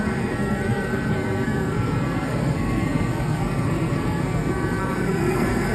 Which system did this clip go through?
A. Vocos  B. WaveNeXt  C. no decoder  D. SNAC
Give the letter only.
D